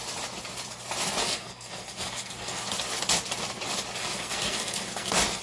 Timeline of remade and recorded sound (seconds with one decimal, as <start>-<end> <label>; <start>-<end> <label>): 0.0-1.2 recorded; 1.2-2.7 remade; 2.7-4.0 recorded; 4.0-5.4 remade